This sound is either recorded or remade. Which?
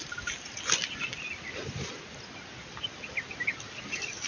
recorded